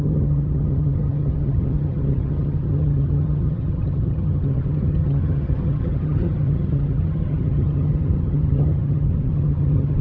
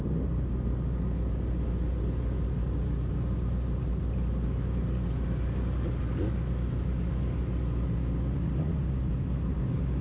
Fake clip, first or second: first